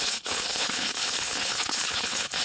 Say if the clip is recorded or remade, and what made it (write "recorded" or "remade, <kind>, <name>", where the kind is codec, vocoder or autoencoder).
remade, codec, HILCodec